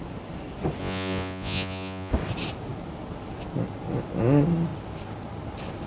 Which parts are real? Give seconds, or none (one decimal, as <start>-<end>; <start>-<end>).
0.0-0.8; 2.1-5.9